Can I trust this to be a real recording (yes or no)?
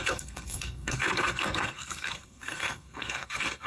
no